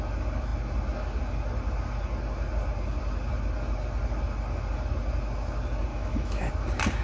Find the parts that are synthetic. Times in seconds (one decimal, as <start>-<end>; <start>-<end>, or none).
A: 5.9-6.5